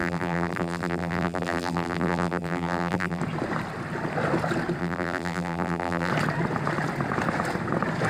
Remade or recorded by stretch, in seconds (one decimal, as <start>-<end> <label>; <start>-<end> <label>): 0.0-3.2 remade; 3.2-4.8 recorded; 4.8-6.1 remade; 6.1-8.1 recorded

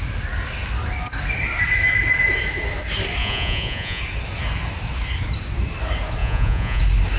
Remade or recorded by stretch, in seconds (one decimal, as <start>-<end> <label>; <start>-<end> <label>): 0.0-3.2 recorded; 3.2-4.0 remade; 4.0-6.2 recorded; 6.2-6.8 remade; 6.8-7.2 recorded

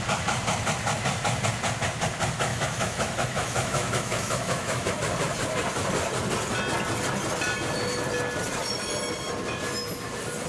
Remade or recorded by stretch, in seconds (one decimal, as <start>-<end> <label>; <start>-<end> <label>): 0.0-2.5 recorded; 2.5-4.9 remade; 4.9-10.5 recorded

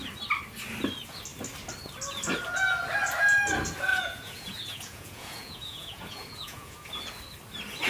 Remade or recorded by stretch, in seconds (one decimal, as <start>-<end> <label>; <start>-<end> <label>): 0.0-3.9 recorded; 3.9-6.9 remade; 6.9-7.9 recorded

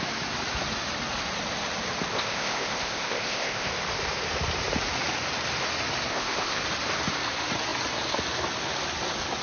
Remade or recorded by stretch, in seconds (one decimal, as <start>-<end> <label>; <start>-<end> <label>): 0.0-2.1 recorded; 2.1-3.7 remade; 3.7-6.1 recorded; 6.1-6.6 remade; 6.6-9.4 recorded